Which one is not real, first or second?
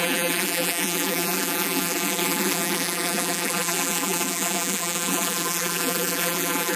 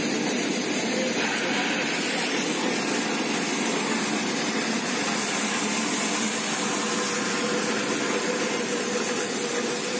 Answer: first